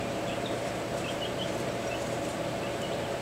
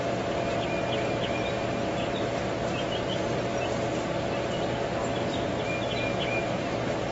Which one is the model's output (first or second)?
first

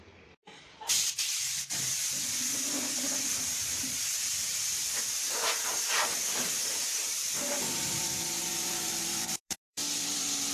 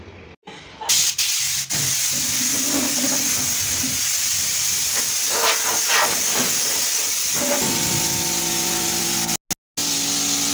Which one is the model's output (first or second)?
first